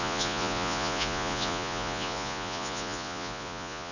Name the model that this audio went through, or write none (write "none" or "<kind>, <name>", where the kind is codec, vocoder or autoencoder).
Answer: vocoder, Vocos